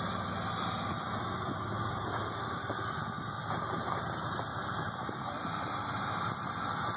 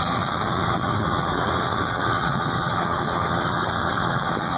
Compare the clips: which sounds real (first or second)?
first